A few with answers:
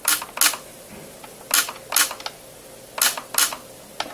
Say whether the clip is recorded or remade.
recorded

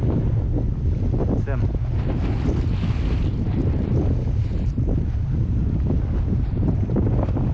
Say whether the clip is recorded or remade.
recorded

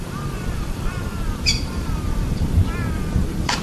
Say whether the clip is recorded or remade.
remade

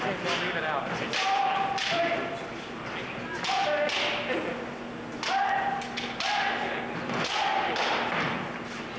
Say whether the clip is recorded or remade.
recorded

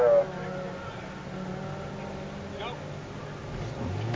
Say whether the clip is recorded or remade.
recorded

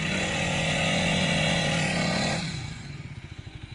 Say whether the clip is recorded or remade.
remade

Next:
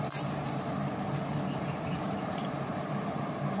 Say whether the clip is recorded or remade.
remade